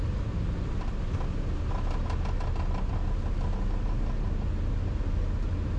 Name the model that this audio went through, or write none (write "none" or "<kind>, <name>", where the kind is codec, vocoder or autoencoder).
none